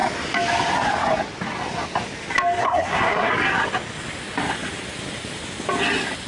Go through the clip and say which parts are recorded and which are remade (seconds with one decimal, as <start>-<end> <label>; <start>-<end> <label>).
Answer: 0.0-2.6 recorded; 2.6-3.3 remade; 3.3-6.3 recorded